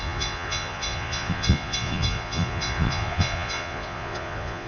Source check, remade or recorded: remade